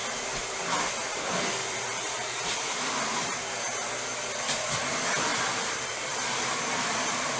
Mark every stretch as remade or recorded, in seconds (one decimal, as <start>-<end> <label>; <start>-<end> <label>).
0.0-0.6 remade; 0.6-1.6 recorded; 1.6-3.4 remade; 3.4-5.3 recorded; 5.3-6.1 remade; 6.1-7.4 recorded